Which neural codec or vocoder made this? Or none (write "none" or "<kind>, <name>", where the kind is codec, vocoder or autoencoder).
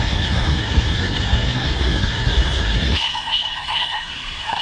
codec, SNAC